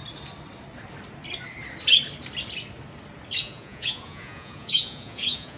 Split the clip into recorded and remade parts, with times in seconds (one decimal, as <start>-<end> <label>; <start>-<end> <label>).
0.0-3.4 recorded; 3.4-5.6 remade